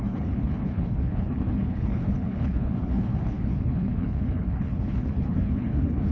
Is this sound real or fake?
fake